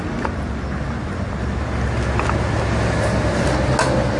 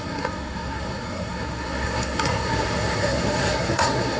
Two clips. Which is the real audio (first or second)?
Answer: first